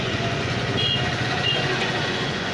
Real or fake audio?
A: fake